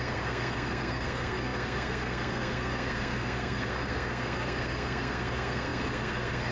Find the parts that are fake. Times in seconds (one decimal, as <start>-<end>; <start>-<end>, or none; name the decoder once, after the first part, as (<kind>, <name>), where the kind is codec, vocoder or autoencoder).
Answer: 0.0-6.5 (codec, SNAC)